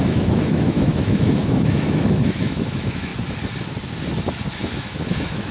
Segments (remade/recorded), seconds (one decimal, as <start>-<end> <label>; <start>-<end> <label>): 0.0-3.1 remade; 3.1-4.5 recorded; 4.5-5.5 remade